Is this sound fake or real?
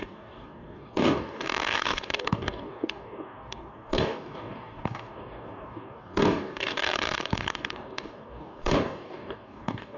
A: fake